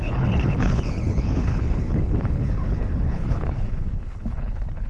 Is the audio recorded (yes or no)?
no